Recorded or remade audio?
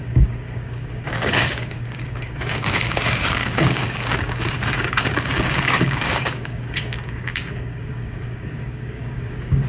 remade